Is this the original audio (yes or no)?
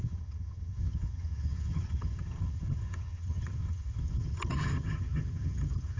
no